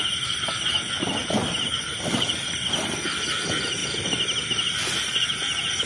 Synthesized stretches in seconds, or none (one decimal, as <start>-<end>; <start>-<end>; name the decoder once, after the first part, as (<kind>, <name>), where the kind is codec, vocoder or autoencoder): 1.2-1.8 (vocoder, BigVGAN v2)